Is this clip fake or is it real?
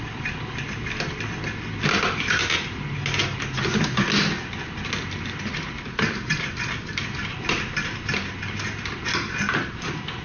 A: real